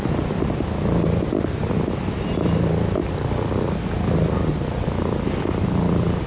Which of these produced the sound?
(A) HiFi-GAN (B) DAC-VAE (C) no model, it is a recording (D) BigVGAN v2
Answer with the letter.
D